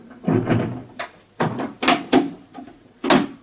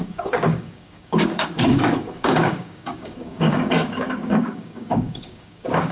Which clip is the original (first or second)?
first